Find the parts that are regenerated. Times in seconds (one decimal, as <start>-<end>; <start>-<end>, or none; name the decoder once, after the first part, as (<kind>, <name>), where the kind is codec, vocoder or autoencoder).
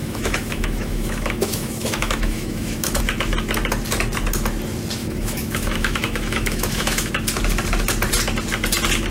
0.0-3.0 (autoencoder, DAC-VAE); 5.0-7.1